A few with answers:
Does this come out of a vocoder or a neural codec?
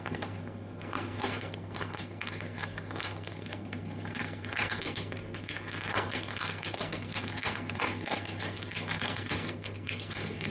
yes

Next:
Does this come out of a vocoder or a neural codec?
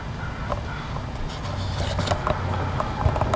no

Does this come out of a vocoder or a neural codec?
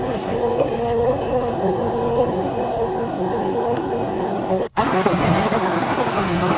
yes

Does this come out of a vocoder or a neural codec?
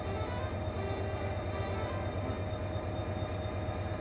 no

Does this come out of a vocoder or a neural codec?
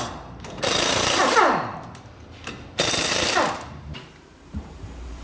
yes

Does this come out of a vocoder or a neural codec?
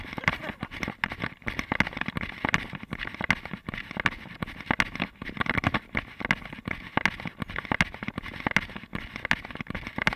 no